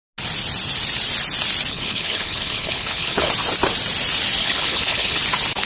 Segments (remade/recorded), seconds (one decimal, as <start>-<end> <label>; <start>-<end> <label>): 0.0-1.7 recorded; 1.7-3.3 remade; 3.3-4.4 recorded; 4.4-5.2 remade; 5.2-5.7 recorded